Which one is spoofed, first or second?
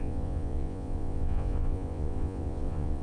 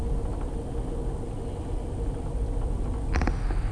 first